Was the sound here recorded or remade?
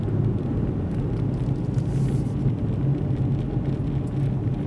recorded